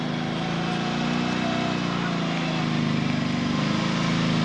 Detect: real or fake real